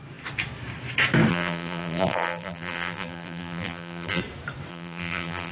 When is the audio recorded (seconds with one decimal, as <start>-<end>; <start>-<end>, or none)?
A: 0.0-1.3; 4.2-4.7